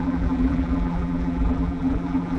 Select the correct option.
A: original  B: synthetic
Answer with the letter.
B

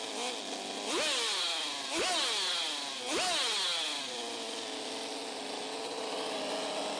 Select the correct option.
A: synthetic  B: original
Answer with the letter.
B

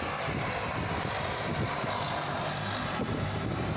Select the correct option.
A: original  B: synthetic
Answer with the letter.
B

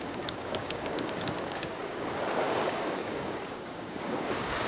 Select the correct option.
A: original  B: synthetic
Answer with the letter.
B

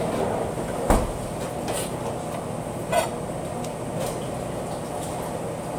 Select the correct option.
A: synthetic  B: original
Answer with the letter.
B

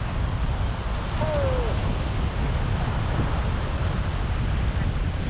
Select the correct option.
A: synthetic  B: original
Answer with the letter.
B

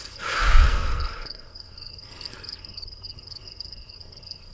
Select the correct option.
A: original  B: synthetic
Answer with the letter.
B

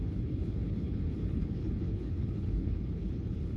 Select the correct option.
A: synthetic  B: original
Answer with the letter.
A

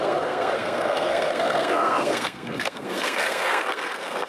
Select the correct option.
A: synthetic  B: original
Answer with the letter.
A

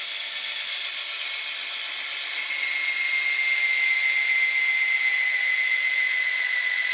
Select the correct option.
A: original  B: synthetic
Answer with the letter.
A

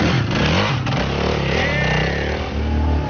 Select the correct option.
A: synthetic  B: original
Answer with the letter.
B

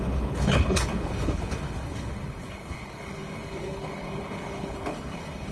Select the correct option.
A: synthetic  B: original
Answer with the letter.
A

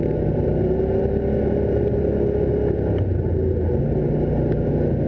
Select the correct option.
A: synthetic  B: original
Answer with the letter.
B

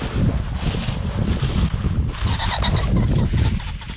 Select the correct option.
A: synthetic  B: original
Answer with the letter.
B